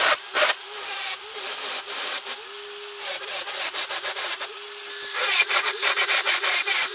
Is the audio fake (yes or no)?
no